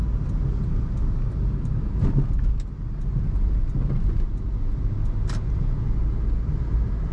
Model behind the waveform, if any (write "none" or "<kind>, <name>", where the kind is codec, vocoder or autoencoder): none